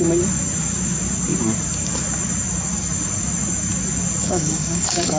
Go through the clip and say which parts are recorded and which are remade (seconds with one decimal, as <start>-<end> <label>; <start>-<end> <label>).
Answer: 0.0-4.2 recorded; 4.2-5.2 remade